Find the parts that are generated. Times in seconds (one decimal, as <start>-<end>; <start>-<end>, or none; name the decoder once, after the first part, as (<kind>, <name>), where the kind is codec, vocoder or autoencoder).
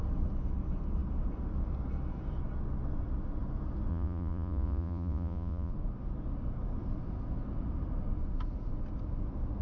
3.9-5.7 (vocoder, Vocos)